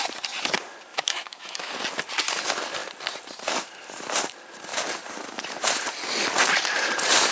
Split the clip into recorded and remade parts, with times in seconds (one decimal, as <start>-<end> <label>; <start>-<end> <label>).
0.0-0.9 recorded; 0.9-1.7 remade; 1.7-7.3 recorded